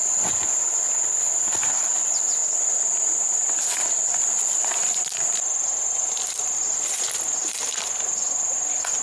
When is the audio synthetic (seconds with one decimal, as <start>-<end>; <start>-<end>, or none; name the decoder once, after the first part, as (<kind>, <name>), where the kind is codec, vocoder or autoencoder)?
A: none